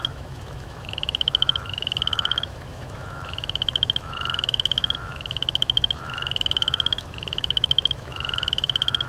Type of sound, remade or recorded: remade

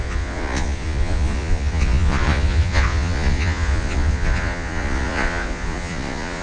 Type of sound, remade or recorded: remade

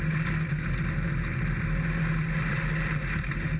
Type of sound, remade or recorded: recorded